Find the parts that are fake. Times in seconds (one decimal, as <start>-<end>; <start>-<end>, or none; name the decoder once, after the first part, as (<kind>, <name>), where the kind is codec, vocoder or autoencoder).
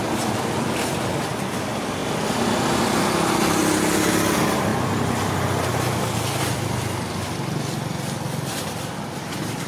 none